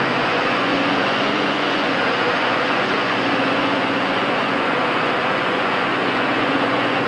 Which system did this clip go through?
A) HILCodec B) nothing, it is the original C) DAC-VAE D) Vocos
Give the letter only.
D